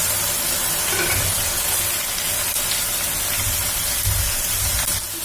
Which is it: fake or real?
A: real